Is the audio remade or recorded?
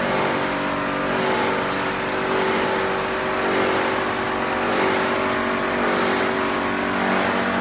recorded